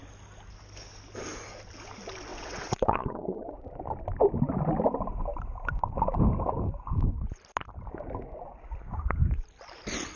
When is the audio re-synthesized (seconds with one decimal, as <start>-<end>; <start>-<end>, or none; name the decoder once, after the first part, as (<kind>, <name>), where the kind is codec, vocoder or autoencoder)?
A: 2.3-3.6 (vocoder, WaveNeXt)